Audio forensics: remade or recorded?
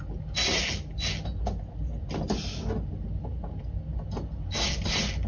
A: recorded